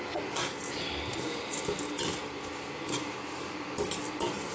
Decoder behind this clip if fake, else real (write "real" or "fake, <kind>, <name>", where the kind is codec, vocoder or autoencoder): real